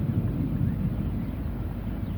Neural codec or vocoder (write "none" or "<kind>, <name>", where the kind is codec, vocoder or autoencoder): none